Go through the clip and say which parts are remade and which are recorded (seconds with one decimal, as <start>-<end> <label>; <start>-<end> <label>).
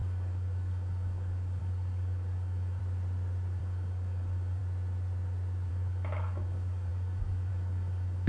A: 0.0-2.8 remade; 2.8-3.6 recorded; 3.6-4.6 remade; 4.6-5.7 recorded; 5.7-8.3 remade